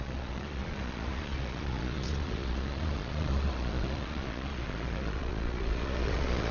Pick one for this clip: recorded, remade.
remade